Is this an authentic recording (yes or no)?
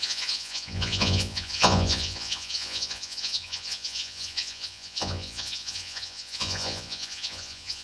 no